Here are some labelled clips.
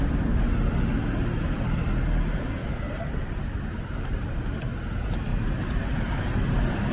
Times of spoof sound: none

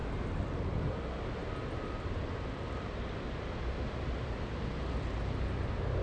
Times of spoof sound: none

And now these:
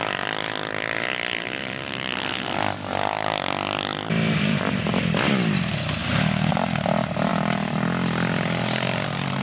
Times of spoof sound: 3.9-4.8